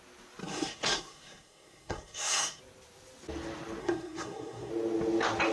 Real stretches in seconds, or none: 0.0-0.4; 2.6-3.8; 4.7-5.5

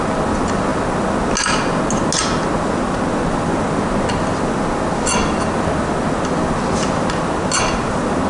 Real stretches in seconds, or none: 0.0-8.3